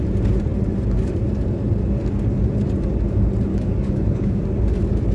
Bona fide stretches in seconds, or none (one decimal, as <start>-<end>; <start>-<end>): 0.0-3.5; 4.4-5.1